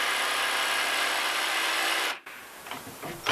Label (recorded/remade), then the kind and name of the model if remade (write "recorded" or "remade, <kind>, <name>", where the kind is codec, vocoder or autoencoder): recorded